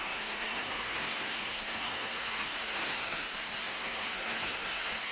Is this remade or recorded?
remade